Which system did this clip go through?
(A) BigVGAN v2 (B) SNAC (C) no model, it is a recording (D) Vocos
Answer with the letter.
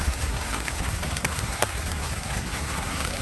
B